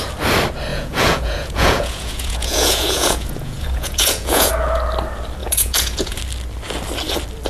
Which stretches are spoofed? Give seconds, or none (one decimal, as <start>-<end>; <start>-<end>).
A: 0.7-4.5; 5.4-6.2